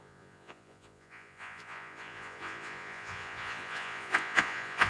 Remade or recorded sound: remade